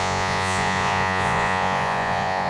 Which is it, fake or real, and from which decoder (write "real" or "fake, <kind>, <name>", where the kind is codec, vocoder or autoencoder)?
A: fake, vocoder, Vocos